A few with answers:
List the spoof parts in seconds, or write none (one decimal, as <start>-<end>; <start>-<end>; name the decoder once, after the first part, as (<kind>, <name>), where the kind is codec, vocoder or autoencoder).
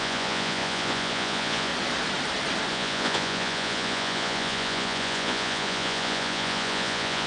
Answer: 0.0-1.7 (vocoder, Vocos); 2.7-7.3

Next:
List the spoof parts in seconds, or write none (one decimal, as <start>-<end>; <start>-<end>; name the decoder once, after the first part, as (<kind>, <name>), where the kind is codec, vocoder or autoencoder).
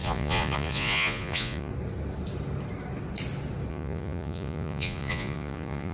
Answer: 0.0-1.7 (vocoder, Vocos); 3.7-5.9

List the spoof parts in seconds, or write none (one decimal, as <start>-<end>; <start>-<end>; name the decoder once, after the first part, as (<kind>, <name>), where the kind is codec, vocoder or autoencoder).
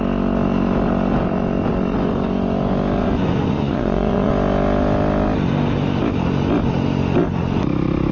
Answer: 3.0-4.3 (vocoder, Vocos)